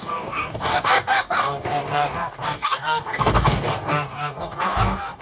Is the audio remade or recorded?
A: remade